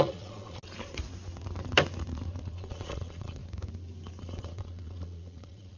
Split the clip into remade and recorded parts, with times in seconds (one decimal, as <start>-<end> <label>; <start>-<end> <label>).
0.0-0.6 remade; 0.6-2.4 recorded; 2.4-3.4 remade; 3.4-4.2 recorded; 4.2-5.8 remade